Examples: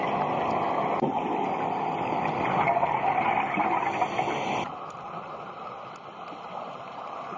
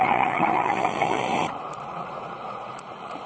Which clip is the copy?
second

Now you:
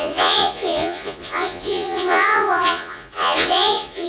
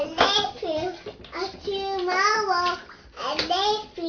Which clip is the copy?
first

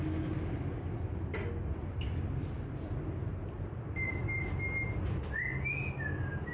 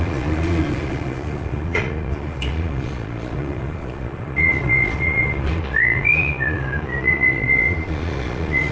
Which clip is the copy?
second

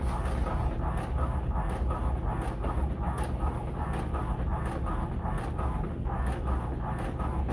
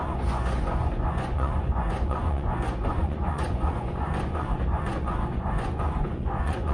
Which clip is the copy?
second